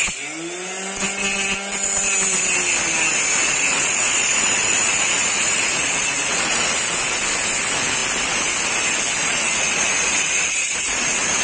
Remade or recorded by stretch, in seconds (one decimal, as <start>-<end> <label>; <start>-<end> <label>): 0.0-3.4 recorded; 3.4-6.8 remade; 6.8-9.2 recorded; 9.2-11.4 remade